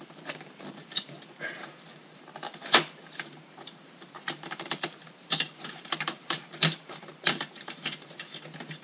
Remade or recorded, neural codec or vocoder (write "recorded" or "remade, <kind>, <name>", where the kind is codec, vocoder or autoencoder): remade, vocoder, BigVGAN v2